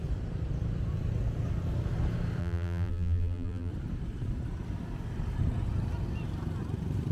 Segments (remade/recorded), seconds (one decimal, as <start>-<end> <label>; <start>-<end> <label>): 0.0-2.4 recorded; 2.4-3.7 remade; 3.7-7.1 recorded